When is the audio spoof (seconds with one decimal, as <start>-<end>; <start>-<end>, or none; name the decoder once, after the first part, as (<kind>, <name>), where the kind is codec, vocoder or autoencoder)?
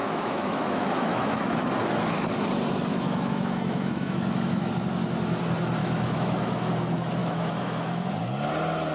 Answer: 0.0-1.7 (autoencoder, DAC-VAE); 2.9-4.7; 5.8-6.7; 7.2-8.1